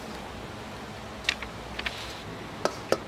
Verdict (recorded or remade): recorded